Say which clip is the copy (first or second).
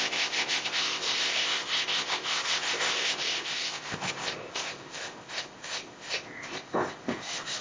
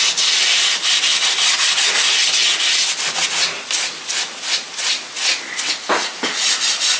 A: first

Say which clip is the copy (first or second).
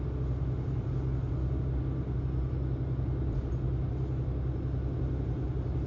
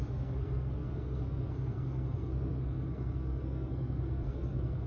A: second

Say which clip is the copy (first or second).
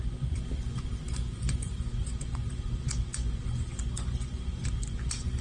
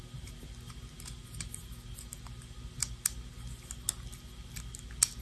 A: first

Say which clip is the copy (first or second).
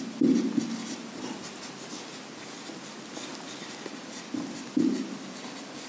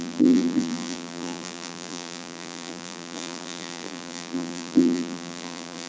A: second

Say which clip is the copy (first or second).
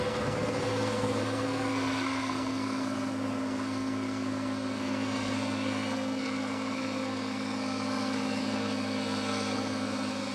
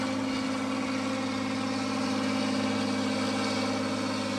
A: first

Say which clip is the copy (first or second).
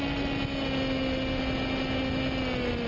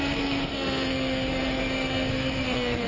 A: second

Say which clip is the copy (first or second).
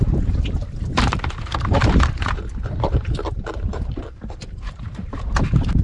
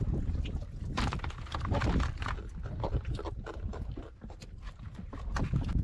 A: first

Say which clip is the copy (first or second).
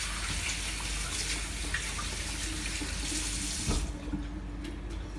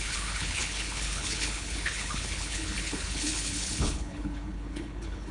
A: second